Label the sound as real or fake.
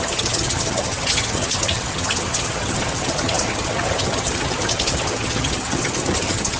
fake